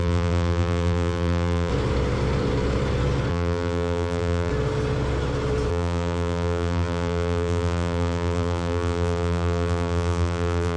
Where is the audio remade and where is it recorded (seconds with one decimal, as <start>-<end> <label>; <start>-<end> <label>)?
0.0-1.7 remade; 1.7-3.3 recorded; 3.3-4.5 remade; 4.5-5.7 recorded; 5.7-10.8 remade